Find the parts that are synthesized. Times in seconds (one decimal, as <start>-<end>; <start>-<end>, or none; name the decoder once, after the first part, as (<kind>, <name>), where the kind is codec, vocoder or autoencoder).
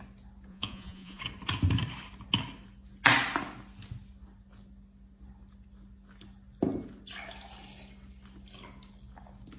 0.5-1.2 (vocoder, Vocos)